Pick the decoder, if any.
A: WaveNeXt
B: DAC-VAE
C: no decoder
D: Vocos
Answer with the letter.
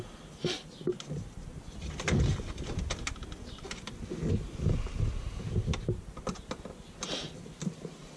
C